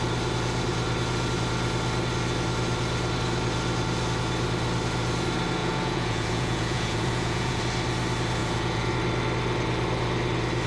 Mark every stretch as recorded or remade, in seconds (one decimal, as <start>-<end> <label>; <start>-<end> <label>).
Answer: 0.0-5.6 recorded; 5.6-7.6 remade; 7.6-8.4 recorded; 8.4-8.9 remade; 8.9-10.7 recorded